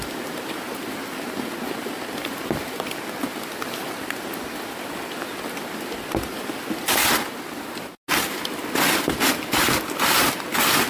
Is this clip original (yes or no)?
yes